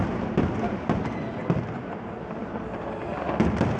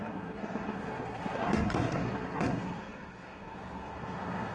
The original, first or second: first